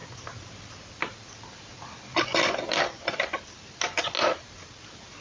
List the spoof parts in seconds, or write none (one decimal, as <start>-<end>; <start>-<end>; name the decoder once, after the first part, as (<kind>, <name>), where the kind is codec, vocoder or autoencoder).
none